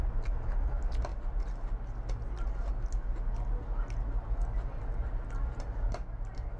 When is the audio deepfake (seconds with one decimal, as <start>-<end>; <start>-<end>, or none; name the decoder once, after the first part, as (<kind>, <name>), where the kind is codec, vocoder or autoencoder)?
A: none